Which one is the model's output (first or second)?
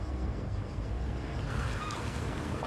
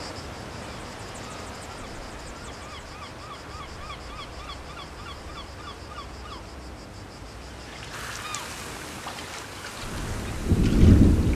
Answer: first